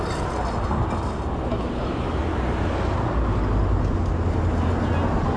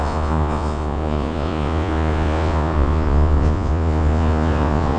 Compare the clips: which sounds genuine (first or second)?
first